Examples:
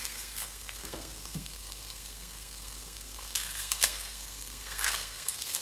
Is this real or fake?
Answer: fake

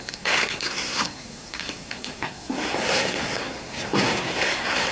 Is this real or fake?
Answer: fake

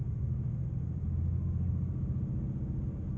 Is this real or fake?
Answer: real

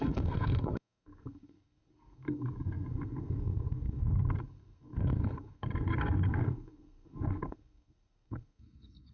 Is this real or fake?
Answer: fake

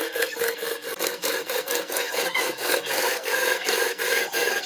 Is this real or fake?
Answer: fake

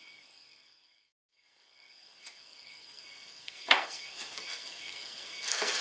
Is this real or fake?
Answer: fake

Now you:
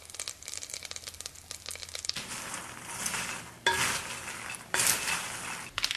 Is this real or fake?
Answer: real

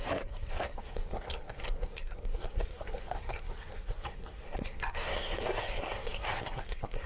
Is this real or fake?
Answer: fake